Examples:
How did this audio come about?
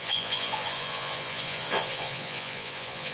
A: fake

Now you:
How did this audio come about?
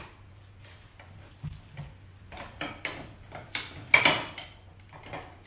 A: real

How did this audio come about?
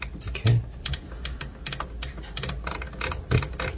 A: real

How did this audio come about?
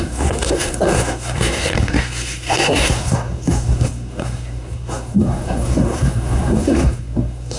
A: fake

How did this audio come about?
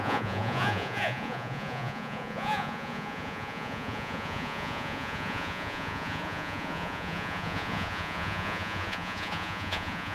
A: fake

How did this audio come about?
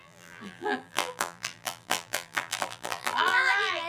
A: fake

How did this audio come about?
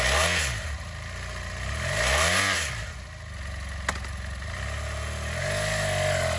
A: real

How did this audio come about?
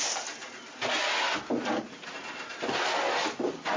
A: real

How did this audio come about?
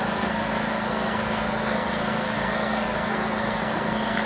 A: fake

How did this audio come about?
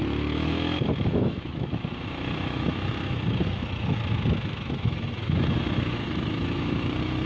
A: fake